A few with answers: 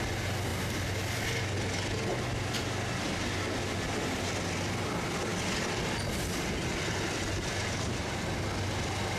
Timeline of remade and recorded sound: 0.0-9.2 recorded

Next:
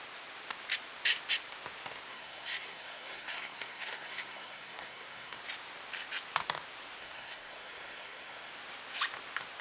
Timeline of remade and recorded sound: 0.0-2.1 recorded; 2.1-5.4 remade; 5.4-7.0 recorded; 7.0-8.5 remade; 8.5-9.6 recorded

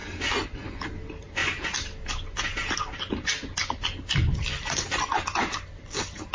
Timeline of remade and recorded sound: 0.0-6.3 recorded

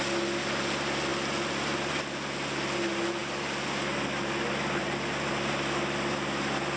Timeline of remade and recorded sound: 0.0-6.8 recorded

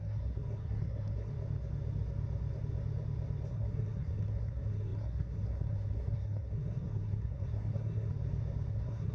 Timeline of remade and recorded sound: 0.0-1.3 remade; 1.3-3.5 recorded; 3.5-8.1 remade; 8.1-8.7 recorded; 8.7-9.1 remade

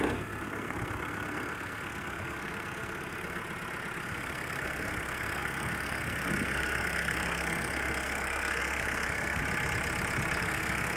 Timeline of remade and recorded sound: 0.0-3.4 remade; 3.4-4.0 recorded; 4.0-9.4 remade; 9.4-10.4 recorded; 10.4-11.0 remade

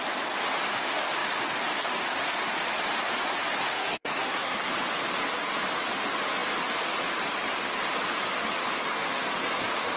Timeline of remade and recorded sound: 0.0-3.7 recorded; 3.7-4.7 remade; 4.7-10.0 recorded

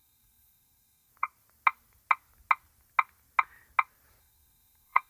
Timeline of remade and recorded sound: 0.0-1.1 remade; 1.1-4.2 recorded; 4.2-5.1 remade